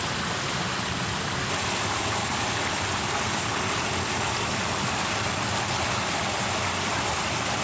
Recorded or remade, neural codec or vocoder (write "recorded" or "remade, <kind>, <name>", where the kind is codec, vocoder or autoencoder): recorded